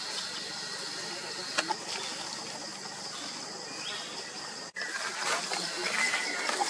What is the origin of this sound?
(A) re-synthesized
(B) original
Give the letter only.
B